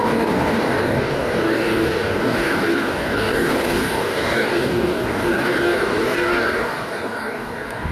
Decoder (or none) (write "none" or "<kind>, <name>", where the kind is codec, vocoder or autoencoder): codec, DAC